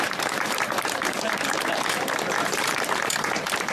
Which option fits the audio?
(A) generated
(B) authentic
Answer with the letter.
A